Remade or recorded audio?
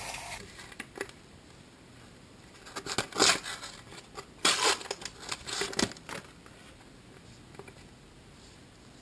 recorded